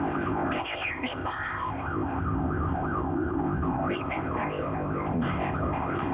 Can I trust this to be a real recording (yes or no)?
no